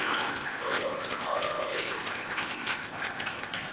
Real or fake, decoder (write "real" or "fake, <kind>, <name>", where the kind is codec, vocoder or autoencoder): fake, codec, ZipCodec